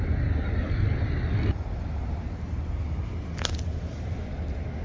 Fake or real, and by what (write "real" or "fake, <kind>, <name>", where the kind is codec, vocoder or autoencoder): real